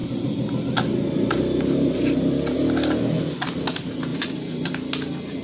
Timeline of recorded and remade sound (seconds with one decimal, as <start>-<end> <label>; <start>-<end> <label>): 0.0-4.1 recorded; 4.1-4.7 remade; 4.7-5.4 recorded